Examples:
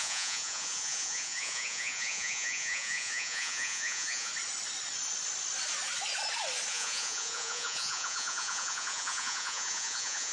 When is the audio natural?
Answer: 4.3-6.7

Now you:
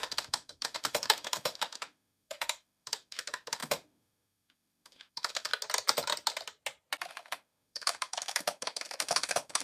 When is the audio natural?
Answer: 5.5-7.1

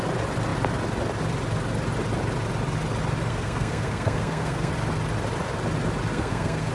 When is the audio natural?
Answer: 0.0-3.3; 4.7-6.1

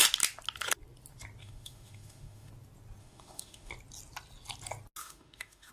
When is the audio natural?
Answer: 0.0-1.4; 2.5-3.0; 3.7-5.0